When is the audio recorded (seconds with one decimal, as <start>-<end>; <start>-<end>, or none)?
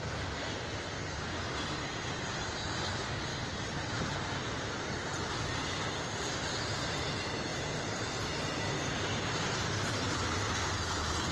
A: 0.0-3.3; 4.9-7.5; 8.0-11.3